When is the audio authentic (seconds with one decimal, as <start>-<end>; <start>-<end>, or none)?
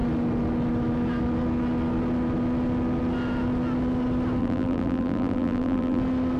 0.0-4.4; 6.0-6.4